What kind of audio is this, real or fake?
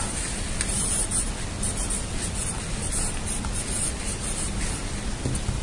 real